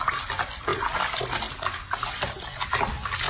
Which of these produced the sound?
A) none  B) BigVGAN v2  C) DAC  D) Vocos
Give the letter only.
A